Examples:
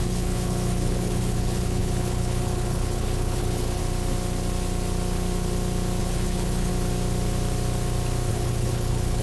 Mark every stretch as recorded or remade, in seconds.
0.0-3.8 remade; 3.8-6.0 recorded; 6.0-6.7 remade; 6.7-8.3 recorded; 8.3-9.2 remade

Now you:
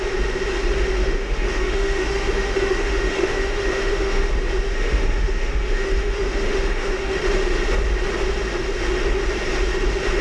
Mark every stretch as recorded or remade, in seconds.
0.0-1.0 recorded; 1.0-4.3 remade; 4.3-4.7 recorded; 4.7-7.2 remade; 7.2-10.2 recorded

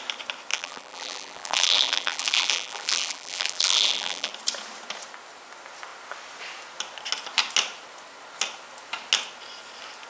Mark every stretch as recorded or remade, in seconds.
0.0-0.5 recorded; 0.5-4.3 remade; 4.3-10.1 recorded

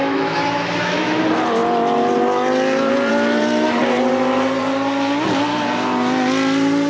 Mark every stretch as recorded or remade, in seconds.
0.0-1.2 remade; 1.2-6.9 recorded